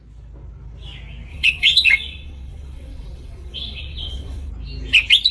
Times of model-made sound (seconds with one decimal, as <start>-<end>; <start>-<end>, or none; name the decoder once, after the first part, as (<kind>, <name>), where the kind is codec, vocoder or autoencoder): 1.3-4.5 (vocoder, WaveNeXt)